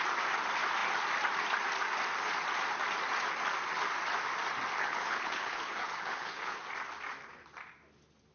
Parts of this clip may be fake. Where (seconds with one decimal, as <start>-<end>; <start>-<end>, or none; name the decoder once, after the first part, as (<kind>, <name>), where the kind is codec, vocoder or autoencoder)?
4.8-6.6 (codec, HILCodec)